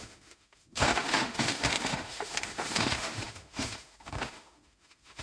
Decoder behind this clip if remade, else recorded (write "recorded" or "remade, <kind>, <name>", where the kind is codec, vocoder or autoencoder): remade, autoencoder, DAC-VAE